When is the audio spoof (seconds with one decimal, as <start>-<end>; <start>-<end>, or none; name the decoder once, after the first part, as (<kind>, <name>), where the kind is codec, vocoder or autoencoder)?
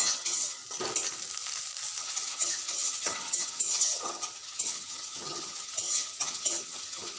0.0-0.6 (vocoder, HiFi-GAN); 2.0-7.2